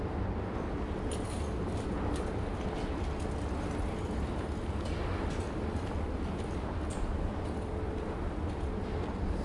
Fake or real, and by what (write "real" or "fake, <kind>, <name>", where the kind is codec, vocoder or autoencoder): real